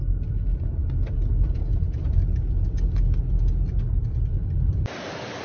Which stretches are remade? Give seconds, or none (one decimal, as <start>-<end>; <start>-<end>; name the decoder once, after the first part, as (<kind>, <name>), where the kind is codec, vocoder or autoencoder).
none